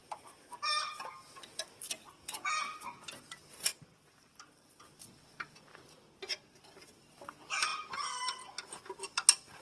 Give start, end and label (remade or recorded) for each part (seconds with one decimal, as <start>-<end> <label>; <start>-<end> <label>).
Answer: 0.0-9.6 recorded